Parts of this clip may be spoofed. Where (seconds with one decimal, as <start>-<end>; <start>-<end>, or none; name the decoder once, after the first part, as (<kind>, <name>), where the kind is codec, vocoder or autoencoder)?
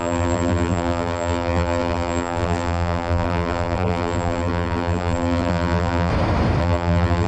0.0-6.1 (vocoder, BigVGAN v2); 6.6-7.3